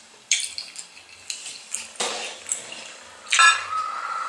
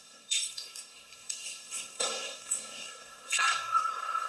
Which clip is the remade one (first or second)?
second